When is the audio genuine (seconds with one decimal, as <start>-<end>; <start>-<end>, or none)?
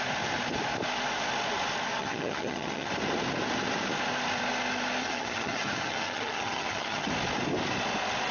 0.0-2.0; 2.9-5.0; 7.1-8.3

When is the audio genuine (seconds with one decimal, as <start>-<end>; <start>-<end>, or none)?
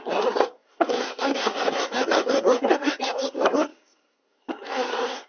none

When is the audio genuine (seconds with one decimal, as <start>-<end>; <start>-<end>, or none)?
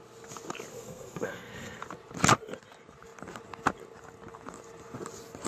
0.0-0.7; 1.8-5.5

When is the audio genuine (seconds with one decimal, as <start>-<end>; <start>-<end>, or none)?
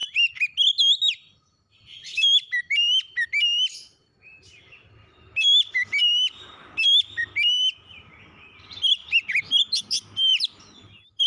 0.0-11.3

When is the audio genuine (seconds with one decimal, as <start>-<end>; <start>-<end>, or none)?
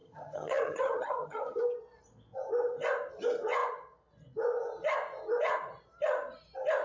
1.6-6.8